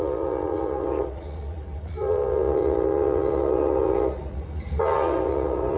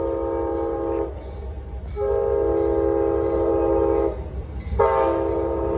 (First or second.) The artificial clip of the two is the first